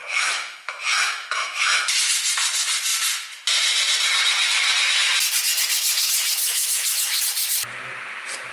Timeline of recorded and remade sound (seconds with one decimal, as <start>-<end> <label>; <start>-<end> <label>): 0.0-1.9 remade; 1.9-6.4 recorded; 6.4-7.2 remade; 7.2-8.5 recorded